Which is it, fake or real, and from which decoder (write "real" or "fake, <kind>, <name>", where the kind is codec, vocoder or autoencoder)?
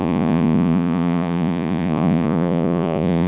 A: fake, vocoder, Vocos